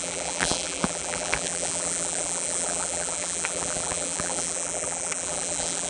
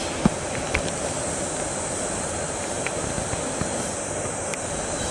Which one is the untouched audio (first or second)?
second